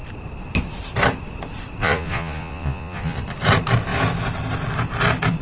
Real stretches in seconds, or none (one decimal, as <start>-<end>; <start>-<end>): 0.0-1.8; 3.2-5.4